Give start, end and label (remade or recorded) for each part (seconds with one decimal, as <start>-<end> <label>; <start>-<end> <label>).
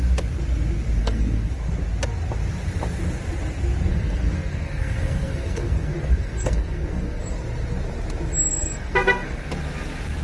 0.0-1.0 recorded; 1.0-1.5 remade; 1.5-3.9 recorded; 3.9-7.2 remade; 7.2-8.5 recorded; 8.5-9.5 remade; 9.5-10.2 recorded